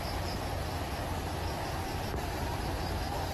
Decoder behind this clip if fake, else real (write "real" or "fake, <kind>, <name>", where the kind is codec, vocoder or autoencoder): real